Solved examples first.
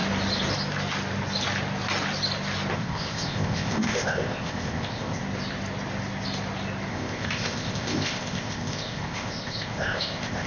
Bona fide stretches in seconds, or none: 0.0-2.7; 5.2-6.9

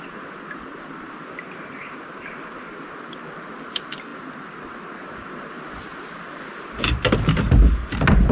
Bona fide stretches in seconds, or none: 0.0-8.3

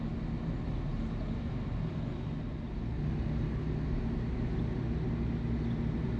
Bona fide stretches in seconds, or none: 0.0-6.2

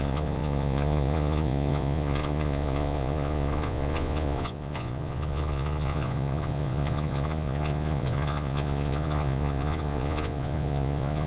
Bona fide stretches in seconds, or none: none

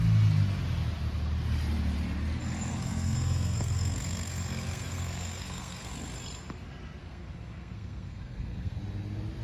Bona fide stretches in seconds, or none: 0.0-2.7; 5.9-7.0; 8.8-9.4